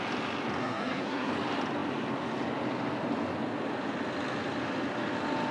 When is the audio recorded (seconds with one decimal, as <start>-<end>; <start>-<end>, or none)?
0.0-0.6; 1.3-5.5